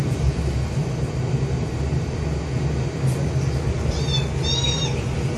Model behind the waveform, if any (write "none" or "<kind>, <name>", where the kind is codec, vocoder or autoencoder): none